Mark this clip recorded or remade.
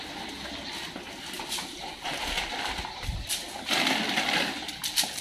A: recorded